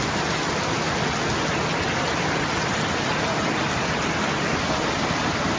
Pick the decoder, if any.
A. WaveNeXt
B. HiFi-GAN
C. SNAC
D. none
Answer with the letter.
D